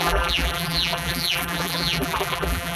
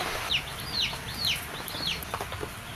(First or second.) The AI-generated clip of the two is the first